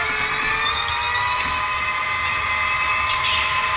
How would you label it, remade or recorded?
recorded